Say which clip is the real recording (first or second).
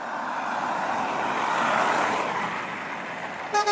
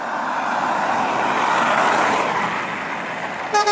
second